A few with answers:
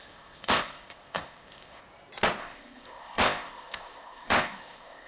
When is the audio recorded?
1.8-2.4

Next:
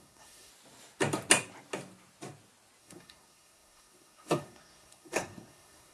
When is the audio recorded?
0.5-2.8